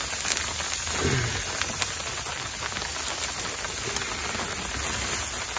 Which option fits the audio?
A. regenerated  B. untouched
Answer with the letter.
B